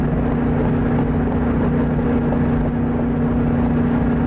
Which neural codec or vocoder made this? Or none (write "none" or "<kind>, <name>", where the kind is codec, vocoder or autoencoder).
none